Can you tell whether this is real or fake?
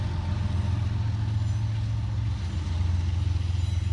real